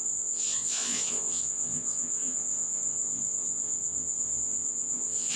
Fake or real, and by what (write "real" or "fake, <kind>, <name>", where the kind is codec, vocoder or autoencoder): fake, vocoder, Vocos